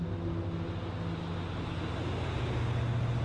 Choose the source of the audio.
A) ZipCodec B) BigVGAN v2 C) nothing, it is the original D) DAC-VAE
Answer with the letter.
C